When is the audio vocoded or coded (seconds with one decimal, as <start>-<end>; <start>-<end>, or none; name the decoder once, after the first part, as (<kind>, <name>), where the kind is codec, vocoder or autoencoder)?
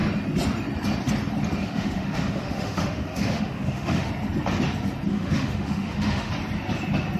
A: 1.6-4.1 (autoencoder, DAC-VAE); 5.1-6.3